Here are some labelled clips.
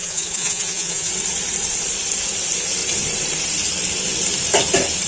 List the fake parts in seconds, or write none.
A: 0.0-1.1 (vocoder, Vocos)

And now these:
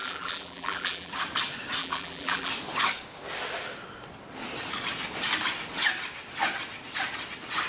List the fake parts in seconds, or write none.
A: 0.0-1.1 (vocoder, BigVGAN v2); 1.8-2.5

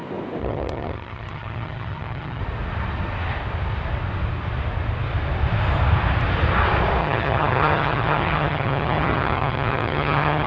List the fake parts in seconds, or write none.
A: 0.4-2.4 (vocoder, HiFi-GAN); 7.0-10.5

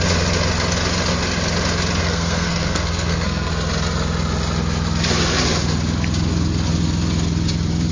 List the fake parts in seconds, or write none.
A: 2.0-3.5 (codec, SNAC)

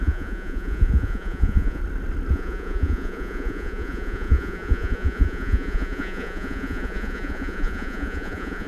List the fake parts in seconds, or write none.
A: 0.0-1.8 (vocoder, Vocos); 2.3-8.7

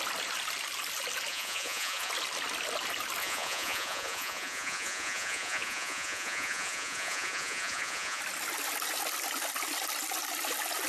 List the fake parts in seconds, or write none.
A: 1.3-2.1 (vocoder, Vocos); 3.2-8.2

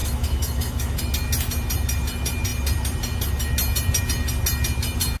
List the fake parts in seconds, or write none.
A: 0.0-1.0 (autoencoder, DAC-VAE)

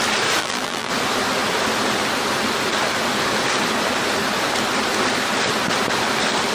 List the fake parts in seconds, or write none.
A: 0.4-0.9 (vocoder, BigVGAN v2)